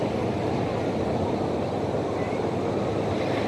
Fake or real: real